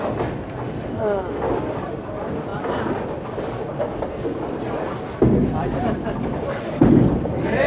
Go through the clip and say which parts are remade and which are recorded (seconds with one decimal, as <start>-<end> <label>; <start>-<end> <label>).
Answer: 0.0-7.7 recorded